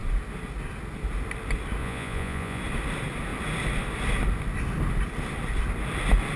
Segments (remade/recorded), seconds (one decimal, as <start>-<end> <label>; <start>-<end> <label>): 0.0-1.8 recorded; 1.8-2.6 remade; 2.6-6.4 recorded

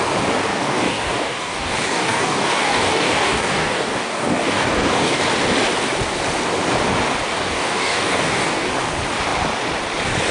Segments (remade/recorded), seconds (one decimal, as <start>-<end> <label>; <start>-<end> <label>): 0.0-0.5 recorded; 0.5-5.2 remade; 5.2-7.3 recorded; 7.3-8.7 remade; 8.7-10.3 recorded

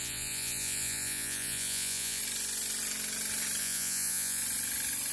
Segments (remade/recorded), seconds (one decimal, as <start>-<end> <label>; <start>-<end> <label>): 0.0-2.2 remade; 2.2-3.6 recorded; 3.6-4.4 remade; 4.4-5.1 recorded

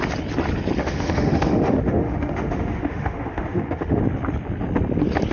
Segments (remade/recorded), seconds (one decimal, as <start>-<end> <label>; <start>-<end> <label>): 0.0-0.8 recorded; 0.8-4.0 remade; 4.0-5.3 recorded

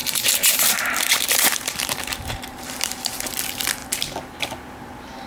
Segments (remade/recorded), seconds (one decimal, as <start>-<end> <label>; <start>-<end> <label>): 0.0-3.2 remade; 3.2-5.3 recorded

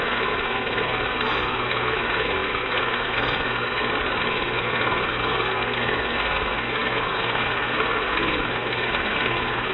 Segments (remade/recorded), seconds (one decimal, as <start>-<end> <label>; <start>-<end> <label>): 0.0-3.8 remade; 3.8-4.3 recorded; 4.3-9.7 remade

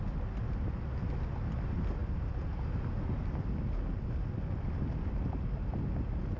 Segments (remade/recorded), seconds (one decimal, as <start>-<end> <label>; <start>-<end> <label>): 0.0-6.4 recorded

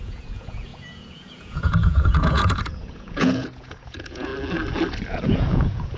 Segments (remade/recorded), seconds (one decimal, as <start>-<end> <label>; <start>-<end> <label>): 0.0-4.3 remade; 4.3-4.9 recorded; 4.9-6.0 remade